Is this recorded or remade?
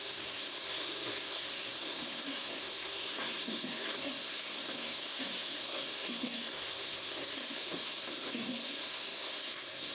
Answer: remade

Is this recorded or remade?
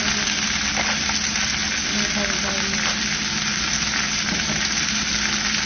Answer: recorded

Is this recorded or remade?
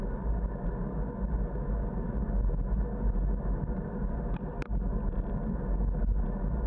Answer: recorded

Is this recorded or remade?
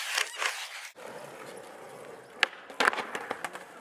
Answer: recorded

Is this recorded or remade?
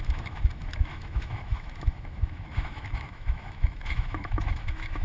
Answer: remade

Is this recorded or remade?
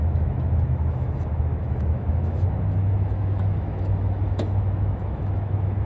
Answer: remade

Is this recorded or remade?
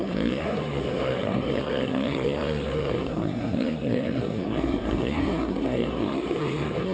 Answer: remade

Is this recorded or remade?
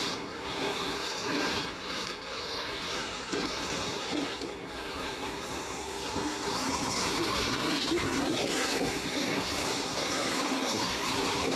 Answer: remade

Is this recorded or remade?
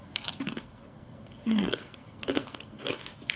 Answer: remade